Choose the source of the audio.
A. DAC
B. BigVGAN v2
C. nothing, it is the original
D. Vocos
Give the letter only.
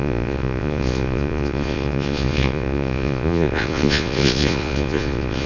D